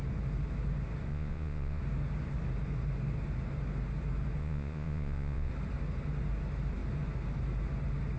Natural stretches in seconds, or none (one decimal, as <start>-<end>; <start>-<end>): 0.0-1.1; 1.8-4.4; 5.5-8.2